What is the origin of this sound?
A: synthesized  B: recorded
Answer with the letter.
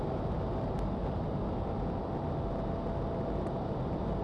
B